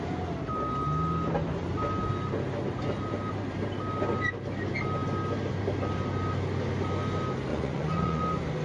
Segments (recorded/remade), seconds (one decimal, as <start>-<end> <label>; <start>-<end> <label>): 0.0-7.5 recorded; 7.5-8.2 remade; 8.2-8.6 recorded